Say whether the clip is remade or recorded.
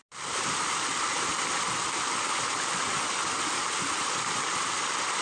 recorded